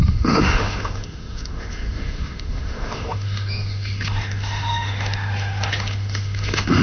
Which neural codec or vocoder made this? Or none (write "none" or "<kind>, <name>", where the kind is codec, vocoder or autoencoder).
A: autoencoder, DAC-VAE